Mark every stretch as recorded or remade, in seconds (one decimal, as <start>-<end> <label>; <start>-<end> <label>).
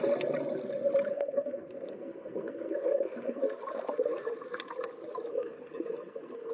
0.0-1.1 recorded; 1.1-3.4 remade; 3.4-5.3 recorded; 5.3-6.5 remade